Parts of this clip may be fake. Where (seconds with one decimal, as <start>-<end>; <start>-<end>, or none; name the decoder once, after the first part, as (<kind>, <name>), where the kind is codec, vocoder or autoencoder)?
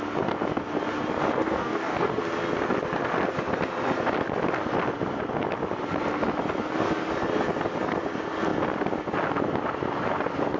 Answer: 1.3-2.2 (codec, DAC)